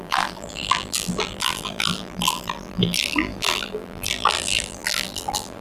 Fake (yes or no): yes